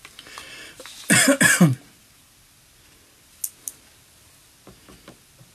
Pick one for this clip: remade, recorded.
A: recorded